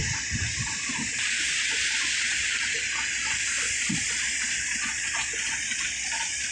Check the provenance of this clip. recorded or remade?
recorded